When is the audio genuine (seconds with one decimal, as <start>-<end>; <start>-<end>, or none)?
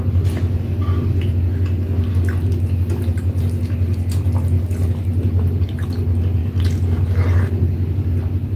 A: 0.0-8.6